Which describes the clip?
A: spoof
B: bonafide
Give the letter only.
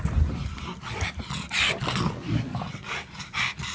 B